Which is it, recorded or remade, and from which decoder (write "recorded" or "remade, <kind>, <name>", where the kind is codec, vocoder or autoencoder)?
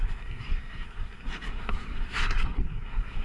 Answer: remade, codec, SNAC